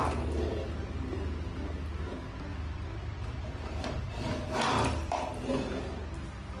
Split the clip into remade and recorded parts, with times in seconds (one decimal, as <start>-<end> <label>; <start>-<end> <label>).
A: 0.0-2.5 recorded; 2.5-5.3 remade; 5.3-6.6 recorded